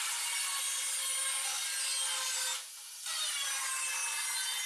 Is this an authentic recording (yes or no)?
yes